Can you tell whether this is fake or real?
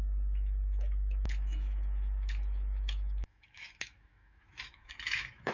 fake